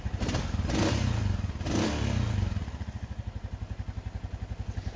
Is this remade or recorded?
recorded